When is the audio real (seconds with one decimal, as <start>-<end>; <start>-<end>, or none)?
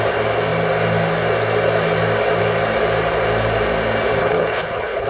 0.0-4.2